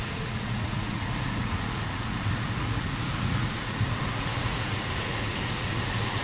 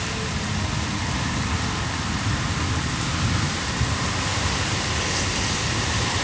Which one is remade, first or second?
first